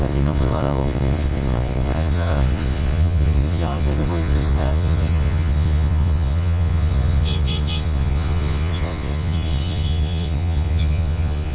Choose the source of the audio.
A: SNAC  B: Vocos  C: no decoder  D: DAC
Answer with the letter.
B